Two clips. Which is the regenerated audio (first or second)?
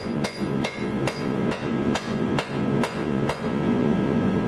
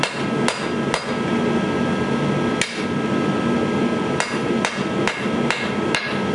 first